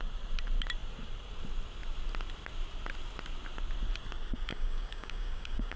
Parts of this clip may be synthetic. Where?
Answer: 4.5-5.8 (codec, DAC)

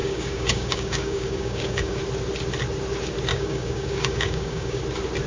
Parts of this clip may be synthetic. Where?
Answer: 0.0-2.0 (codec, DAC); 3.3-4.8

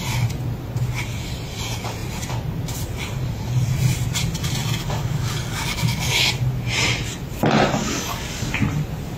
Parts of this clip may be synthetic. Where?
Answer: 4.8-6.3 (codec, DAC); 7.8-8.5

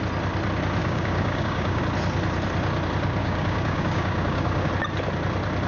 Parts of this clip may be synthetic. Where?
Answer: 0.8-1.8 (codec, DAC); 3.2-4.7

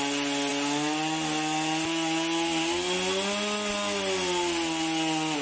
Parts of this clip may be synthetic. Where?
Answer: none

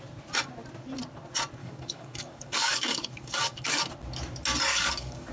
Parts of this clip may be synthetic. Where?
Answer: 1.6-3.8 (codec, DAC); 4.7-5.3